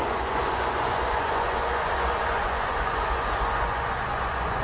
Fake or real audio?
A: fake